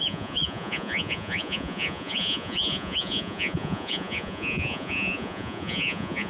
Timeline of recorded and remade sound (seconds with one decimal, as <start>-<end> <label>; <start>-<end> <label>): 0.0-6.3 remade

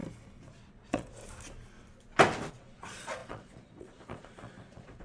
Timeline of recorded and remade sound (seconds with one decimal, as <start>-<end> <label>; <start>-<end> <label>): 0.0-0.7 recorded; 0.7-1.2 remade; 1.2-2.5 recorded; 2.5-5.0 remade

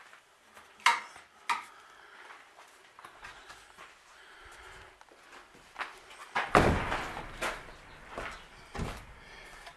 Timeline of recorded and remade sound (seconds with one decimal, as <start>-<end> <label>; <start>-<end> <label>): 0.0-9.8 recorded

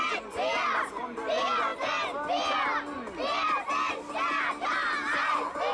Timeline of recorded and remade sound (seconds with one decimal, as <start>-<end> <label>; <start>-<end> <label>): 0.0-5.7 recorded

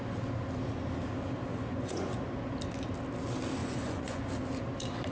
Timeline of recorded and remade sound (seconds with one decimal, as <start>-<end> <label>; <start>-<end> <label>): 0.0-1.5 recorded; 1.5-2.1 remade; 2.1-3.6 recorded; 3.6-4.2 remade; 4.2-5.1 recorded

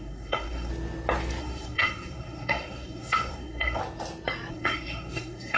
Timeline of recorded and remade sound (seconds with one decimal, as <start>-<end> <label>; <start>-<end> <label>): 0.0-0.7 remade; 0.7-1.4 recorded; 1.4-3.8 remade; 3.8-4.5 recorded; 4.5-5.6 remade